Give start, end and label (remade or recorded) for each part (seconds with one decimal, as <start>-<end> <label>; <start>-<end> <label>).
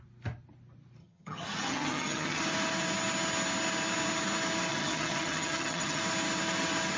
0.0-1.0 recorded; 1.0-2.4 remade; 2.4-4.7 recorded; 4.7-6.0 remade; 6.0-7.0 recorded